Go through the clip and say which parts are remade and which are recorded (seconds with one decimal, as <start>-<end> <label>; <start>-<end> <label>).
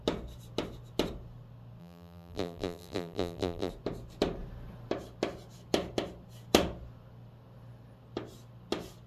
0.0-1.8 recorded; 1.8-3.7 remade; 3.7-9.1 recorded